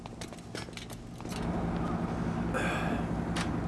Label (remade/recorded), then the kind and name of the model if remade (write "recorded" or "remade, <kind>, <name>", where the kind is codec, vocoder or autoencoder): recorded